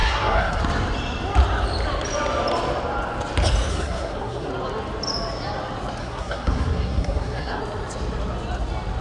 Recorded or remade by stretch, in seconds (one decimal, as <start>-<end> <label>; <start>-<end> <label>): 0.0-0.6 remade; 0.6-3.7 recorded; 3.7-4.5 remade; 4.5-6.0 recorded; 6.0-7.6 remade; 7.6-9.0 recorded